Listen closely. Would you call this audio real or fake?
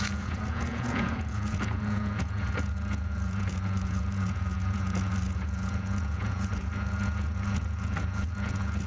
fake